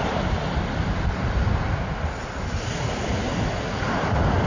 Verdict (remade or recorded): recorded